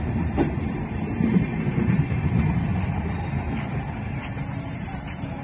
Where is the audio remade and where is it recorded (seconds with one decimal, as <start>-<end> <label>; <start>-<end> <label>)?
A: 0.0-2.7 remade; 2.7-4.1 recorded; 4.1-5.4 remade